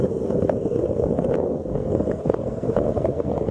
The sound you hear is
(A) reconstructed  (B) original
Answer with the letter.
A